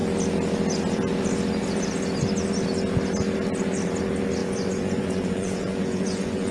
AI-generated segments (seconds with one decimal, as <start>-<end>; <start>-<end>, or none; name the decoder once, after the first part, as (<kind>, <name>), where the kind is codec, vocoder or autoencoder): 4.4-6.5 (vocoder, Vocos)